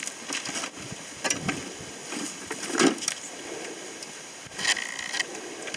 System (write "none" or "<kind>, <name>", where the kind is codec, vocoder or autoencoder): none